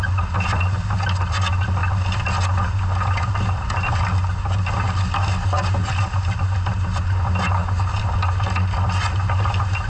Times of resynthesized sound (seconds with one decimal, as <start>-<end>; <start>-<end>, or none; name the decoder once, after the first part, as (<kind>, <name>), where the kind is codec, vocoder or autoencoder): none